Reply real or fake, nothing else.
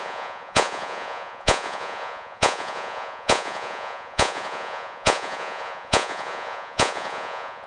fake